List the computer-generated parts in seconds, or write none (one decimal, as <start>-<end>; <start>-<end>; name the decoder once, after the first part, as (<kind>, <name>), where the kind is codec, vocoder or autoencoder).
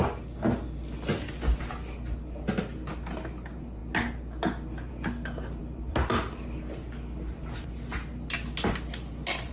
none